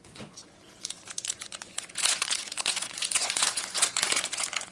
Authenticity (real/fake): fake